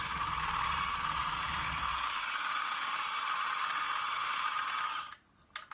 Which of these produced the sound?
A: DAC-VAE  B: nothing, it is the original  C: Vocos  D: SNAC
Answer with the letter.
B